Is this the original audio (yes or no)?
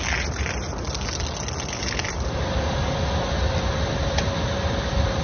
yes